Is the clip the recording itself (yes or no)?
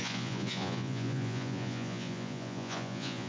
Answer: no